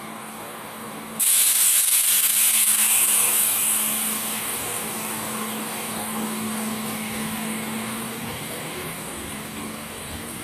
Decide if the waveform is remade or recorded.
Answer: remade